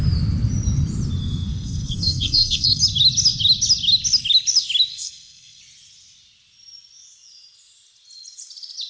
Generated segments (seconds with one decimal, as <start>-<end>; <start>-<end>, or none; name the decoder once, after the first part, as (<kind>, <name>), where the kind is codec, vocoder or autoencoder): 1.2-2.8 (codec, SNAC); 4.9-5.6